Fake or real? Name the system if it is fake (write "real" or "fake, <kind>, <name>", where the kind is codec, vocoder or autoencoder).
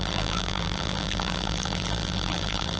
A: fake, vocoder, BigVGAN v2